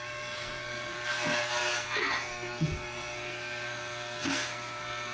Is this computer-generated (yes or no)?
yes